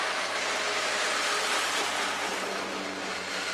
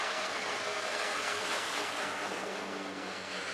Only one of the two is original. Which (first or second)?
first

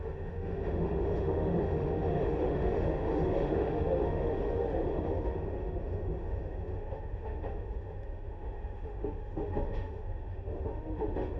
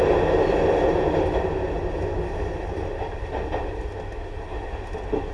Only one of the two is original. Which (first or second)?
second